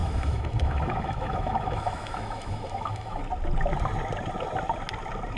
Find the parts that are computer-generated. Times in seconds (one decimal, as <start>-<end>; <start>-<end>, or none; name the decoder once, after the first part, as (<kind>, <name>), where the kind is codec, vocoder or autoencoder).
0.0-3.2 (autoencoder, DAC-VAE)